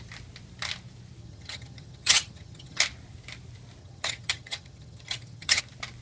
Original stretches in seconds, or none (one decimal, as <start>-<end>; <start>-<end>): 0.0-1.2; 2.8-3.8; 5.6-6.0